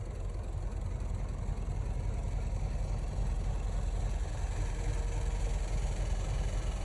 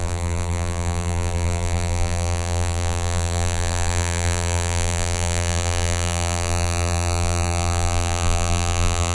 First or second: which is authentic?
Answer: first